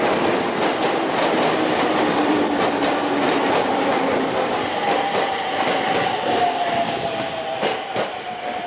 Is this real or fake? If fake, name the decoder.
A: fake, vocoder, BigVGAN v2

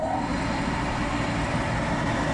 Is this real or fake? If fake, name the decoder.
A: fake, vocoder, BigVGAN v2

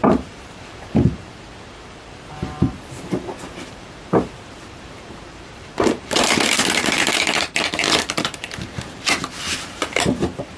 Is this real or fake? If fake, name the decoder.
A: fake, vocoder, BigVGAN v2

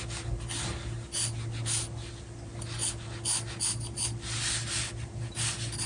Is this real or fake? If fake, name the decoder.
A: real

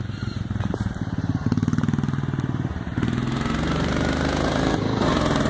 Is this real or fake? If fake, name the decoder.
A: fake, vocoder, BigVGAN v2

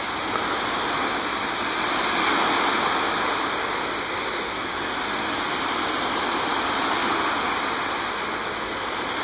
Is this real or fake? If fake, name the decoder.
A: real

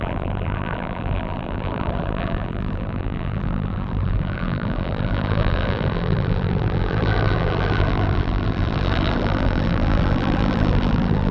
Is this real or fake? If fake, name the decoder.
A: fake, vocoder, BigVGAN v2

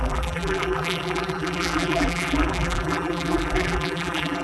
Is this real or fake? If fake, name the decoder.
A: fake, vocoder, BigVGAN v2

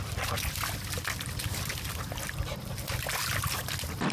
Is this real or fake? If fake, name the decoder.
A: real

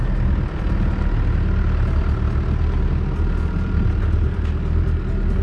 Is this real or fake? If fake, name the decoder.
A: fake, vocoder, BigVGAN v2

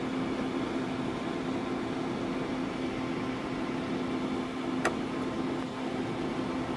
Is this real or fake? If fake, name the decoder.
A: real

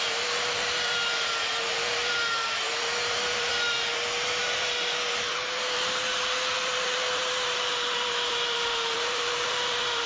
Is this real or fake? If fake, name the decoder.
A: fake, vocoder, BigVGAN v2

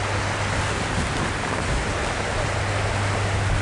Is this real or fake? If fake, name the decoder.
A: real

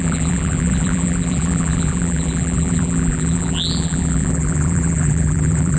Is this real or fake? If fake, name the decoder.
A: fake, vocoder, BigVGAN v2